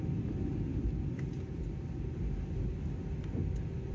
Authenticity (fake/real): real